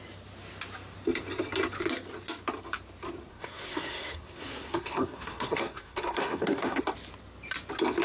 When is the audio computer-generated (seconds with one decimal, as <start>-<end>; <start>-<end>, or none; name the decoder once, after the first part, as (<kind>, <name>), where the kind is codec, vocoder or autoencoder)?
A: 3.3-6.8 (codec, SNAC)